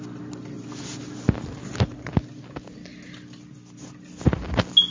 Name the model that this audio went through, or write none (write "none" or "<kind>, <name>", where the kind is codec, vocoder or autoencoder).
none